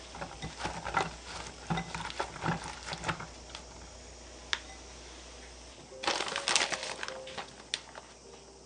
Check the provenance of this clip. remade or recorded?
recorded